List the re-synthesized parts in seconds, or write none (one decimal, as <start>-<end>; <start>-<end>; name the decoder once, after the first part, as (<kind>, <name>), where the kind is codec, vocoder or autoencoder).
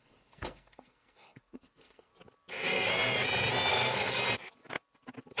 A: 0.0-2.1 (codec, SNAC); 3.7-4.2